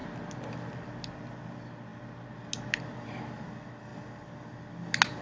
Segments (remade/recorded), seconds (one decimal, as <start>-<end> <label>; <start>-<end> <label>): 0.0-5.2 recorded

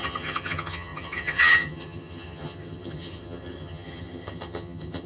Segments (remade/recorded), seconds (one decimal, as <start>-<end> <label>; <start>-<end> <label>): 0.0-5.1 remade

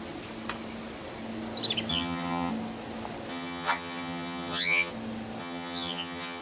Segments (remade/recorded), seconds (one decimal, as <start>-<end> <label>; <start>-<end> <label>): 0.0-1.9 recorded; 1.9-2.5 remade; 2.5-3.3 recorded; 3.3-4.9 remade; 4.9-5.4 recorded; 5.4-6.4 remade

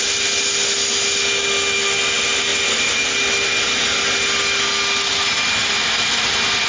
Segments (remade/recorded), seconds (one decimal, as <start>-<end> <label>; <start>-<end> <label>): 0.0-6.7 recorded

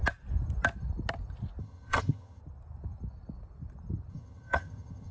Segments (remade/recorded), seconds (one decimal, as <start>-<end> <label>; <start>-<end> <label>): 0.0-1.6 recorded; 1.6-2.4 remade; 2.4-4.1 recorded; 4.1-5.1 remade

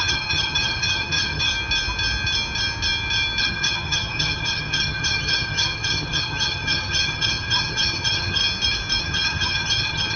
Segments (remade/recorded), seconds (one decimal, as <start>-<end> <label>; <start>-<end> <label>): 0.0-1.5 remade; 1.5-3.4 recorded; 3.4-8.4 remade; 8.4-9.0 recorded; 9.0-10.2 remade

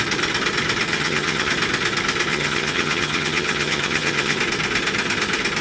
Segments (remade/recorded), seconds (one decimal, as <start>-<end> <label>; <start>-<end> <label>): 0.0-0.9 recorded; 0.9-1.5 remade; 1.5-2.3 recorded; 2.3-4.4 remade; 4.4-5.6 recorded

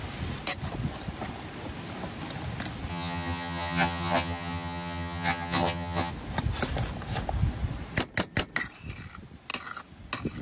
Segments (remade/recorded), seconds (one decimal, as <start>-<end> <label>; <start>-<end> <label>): 0.0-2.9 recorded; 2.9-6.1 remade; 6.1-10.4 recorded